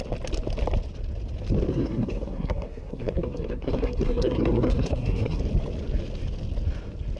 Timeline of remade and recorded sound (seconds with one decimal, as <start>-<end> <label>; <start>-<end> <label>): 0.0-1.7 recorded; 1.7-5.4 remade; 5.4-7.2 recorded